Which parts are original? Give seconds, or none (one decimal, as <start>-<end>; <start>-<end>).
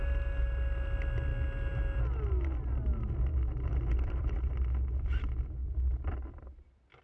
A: 0.0-3.3; 4.5-5.6